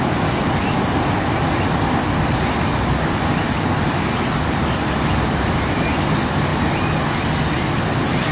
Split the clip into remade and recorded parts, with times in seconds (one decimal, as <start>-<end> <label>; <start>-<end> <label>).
0.0-8.3 recorded

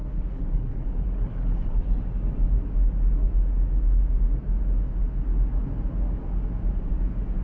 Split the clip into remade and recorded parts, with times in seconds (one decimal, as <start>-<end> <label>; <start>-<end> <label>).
0.0-1.8 remade; 1.8-7.4 recorded

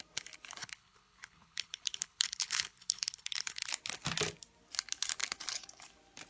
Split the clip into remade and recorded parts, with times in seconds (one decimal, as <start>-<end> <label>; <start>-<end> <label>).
0.0-0.6 recorded; 0.6-3.7 remade; 3.7-6.3 recorded

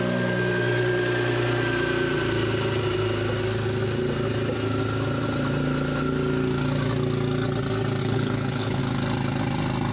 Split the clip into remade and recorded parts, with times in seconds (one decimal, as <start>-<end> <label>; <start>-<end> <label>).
0.0-8.0 recorded; 8.0-8.8 remade; 8.8-9.9 recorded

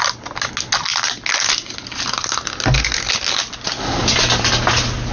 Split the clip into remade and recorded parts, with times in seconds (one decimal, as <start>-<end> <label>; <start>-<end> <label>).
0.0-5.1 recorded

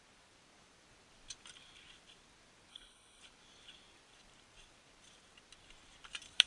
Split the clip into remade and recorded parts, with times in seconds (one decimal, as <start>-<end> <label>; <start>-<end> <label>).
0.0-2.7 recorded; 2.7-3.2 remade; 3.2-6.5 recorded

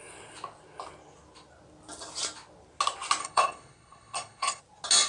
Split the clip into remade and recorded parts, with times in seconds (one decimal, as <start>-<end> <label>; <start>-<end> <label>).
0.0-3.2 recorded; 3.2-4.6 remade; 4.6-5.1 recorded

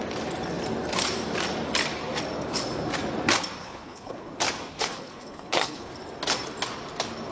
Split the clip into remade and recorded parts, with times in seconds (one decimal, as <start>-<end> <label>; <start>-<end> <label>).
0.0-3.6 recorded; 3.6-4.3 remade; 4.3-4.7 recorded; 4.7-5.9 remade; 5.9-7.3 recorded